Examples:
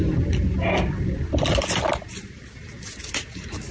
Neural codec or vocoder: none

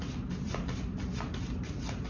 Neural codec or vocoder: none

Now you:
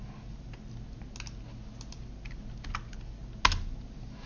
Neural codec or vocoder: none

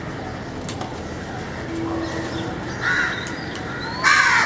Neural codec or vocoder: none